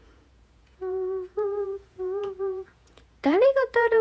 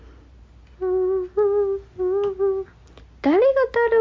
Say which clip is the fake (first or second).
first